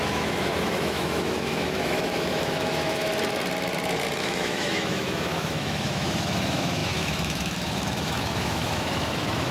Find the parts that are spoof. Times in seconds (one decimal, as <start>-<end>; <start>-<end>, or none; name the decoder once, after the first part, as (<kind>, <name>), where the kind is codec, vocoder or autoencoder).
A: 0.0-3.1 (autoencoder, DAC-VAE); 4.2-9.5